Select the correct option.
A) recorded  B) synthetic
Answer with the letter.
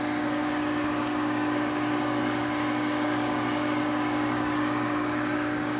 B